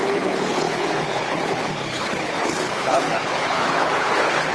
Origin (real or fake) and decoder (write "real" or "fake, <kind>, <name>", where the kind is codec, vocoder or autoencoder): fake, codec, HILCodec